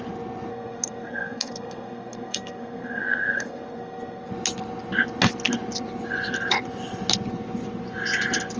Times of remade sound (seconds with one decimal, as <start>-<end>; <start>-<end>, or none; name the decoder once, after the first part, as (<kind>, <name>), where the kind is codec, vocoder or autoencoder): 0.5-4.3 (codec, SNAC)